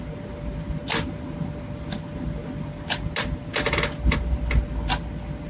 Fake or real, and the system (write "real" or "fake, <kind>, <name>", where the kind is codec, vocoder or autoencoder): real